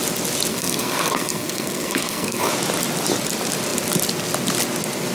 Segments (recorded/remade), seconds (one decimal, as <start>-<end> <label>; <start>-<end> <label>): 0.0-0.5 recorded; 0.5-2.5 remade; 2.5-5.1 recorded